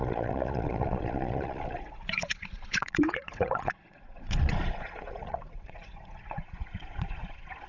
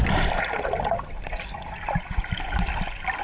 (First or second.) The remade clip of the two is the first